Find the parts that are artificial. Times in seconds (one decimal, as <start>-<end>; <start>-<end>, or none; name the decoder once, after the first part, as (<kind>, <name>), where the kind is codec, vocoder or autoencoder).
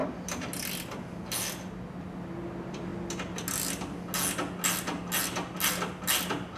none